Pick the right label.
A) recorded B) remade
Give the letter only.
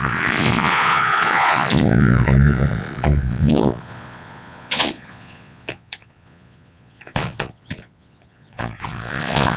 B